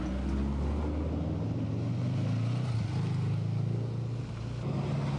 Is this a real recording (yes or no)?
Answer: yes